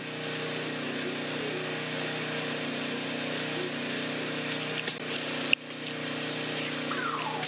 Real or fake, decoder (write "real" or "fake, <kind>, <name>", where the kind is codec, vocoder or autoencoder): real